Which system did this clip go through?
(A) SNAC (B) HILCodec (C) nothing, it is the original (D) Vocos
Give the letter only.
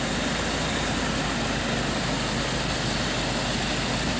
C